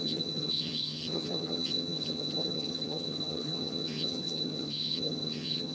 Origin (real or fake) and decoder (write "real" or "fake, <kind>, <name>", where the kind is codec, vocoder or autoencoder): fake, vocoder, HiFi-GAN